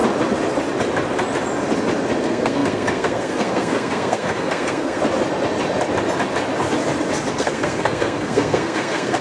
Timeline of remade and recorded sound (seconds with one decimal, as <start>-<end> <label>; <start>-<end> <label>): 0.0-2.2 recorded; 2.2-5.0 remade; 5.0-7.3 recorded; 7.3-9.2 remade